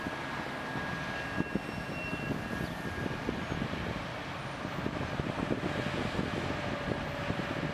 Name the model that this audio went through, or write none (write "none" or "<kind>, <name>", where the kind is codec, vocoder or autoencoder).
none